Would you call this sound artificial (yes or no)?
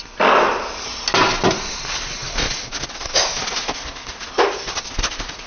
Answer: no